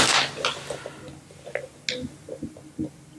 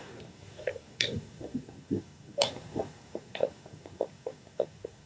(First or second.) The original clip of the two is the first